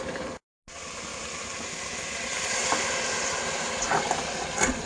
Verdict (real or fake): real